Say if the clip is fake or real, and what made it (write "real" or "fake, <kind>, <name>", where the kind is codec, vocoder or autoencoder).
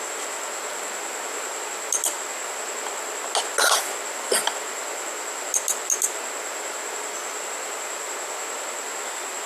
real